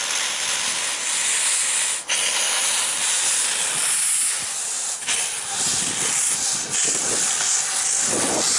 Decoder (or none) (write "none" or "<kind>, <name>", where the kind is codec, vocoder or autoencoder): none